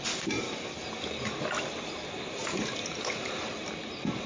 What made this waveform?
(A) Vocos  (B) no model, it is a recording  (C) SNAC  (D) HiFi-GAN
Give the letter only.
B